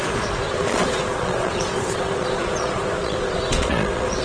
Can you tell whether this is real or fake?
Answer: fake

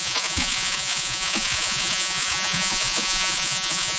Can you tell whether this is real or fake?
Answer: fake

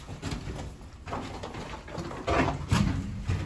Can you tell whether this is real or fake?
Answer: real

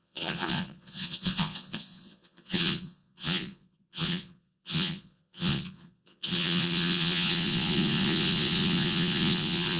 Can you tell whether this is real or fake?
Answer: fake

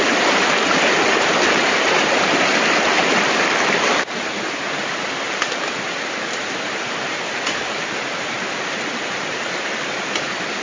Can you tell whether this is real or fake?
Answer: real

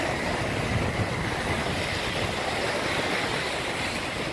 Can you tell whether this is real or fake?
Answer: real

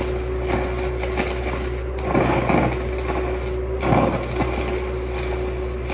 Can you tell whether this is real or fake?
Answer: real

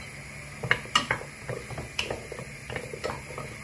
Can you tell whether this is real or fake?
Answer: real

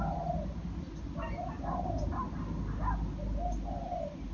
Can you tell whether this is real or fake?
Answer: real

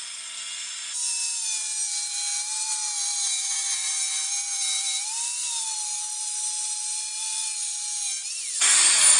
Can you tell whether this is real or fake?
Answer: real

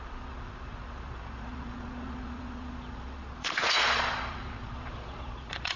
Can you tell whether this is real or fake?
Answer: fake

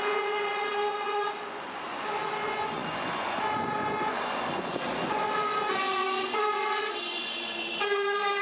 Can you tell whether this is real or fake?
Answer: fake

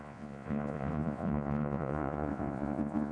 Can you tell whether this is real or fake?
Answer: fake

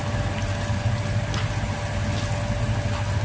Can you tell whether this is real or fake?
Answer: real